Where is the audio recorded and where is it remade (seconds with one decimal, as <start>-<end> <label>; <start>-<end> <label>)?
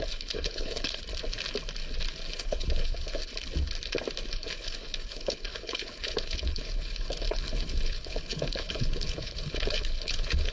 0.0-1.0 remade; 1.0-2.3 recorded; 2.3-3.3 remade; 3.3-4.3 recorded; 4.3-10.5 remade